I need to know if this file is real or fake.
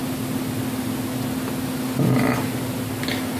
real